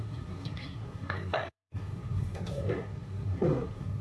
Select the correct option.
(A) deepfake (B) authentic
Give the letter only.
A